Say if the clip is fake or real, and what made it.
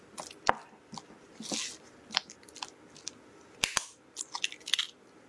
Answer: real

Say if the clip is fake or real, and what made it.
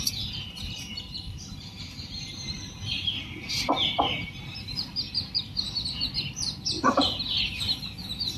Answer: fake, vocoder, BigVGAN v2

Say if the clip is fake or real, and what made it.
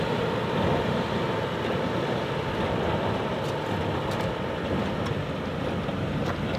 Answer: real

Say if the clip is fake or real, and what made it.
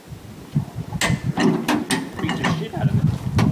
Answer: real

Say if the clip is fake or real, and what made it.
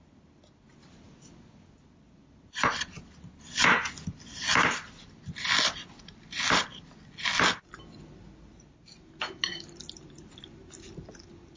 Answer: real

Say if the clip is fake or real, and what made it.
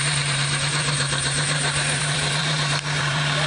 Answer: fake, vocoder, BigVGAN v2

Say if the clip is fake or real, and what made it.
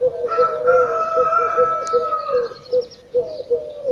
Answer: real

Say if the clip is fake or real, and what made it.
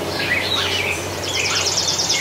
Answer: fake, vocoder, BigVGAN v2